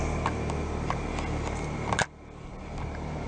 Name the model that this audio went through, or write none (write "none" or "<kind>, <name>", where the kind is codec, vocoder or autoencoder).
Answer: none